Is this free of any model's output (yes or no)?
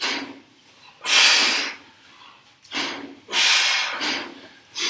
yes